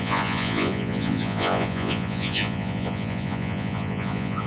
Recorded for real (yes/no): no